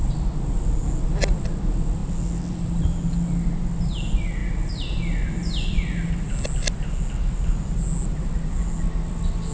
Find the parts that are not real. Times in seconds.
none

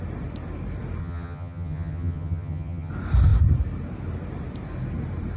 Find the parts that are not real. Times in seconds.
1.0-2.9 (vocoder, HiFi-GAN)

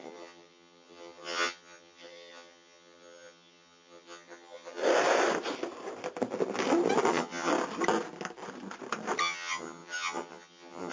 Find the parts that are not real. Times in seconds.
0.0-4.8 (vocoder, HiFi-GAN); 7.1-7.5; 9.2-10.9